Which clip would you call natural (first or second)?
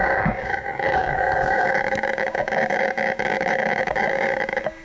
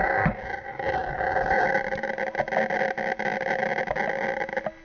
second